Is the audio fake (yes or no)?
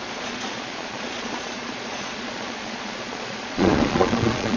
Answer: yes